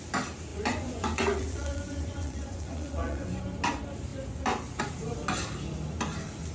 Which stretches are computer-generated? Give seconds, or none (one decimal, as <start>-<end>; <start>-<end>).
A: 0.5-3.4